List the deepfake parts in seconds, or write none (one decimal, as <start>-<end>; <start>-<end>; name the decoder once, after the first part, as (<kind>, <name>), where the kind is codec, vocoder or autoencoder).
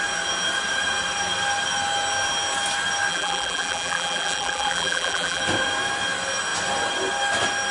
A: 3.1-5.4 (vocoder, BigVGAN v2)